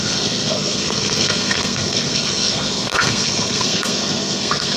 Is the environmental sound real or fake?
fake